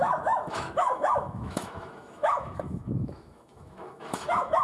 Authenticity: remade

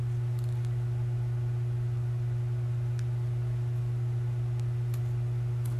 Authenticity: recorded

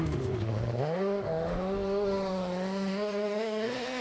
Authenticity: remade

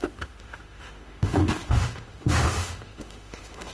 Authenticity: remade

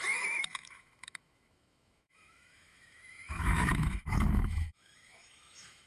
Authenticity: remade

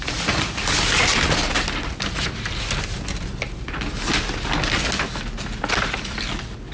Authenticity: recorded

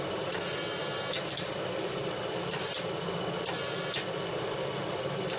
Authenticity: recorded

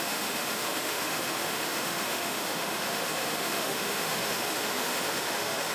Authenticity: remade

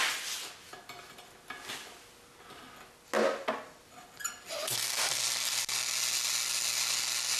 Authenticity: recorded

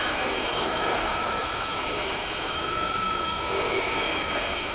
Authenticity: remade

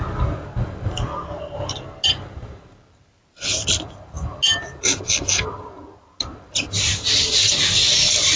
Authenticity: recorded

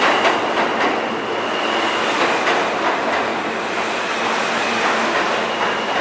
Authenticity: recorded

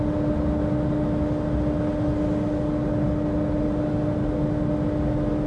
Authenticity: recorded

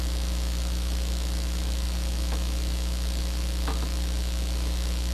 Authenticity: remade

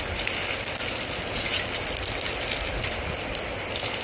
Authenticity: recorded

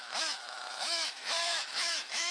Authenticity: remade